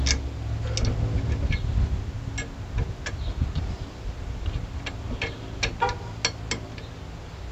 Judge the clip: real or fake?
real